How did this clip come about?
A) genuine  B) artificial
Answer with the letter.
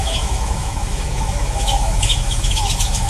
B